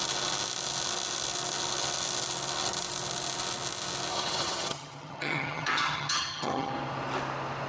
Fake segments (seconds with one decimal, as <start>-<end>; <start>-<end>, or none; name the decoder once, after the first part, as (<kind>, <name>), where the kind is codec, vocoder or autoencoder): 4.1-6.7 (vocoder, HiFi-GAN)